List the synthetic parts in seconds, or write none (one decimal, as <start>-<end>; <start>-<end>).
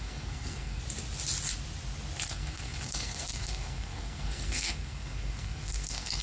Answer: 0.0-0.8; 2.3-6.2